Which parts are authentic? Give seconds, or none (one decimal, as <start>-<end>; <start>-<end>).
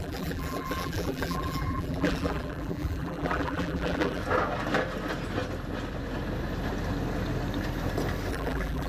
4.2-8.3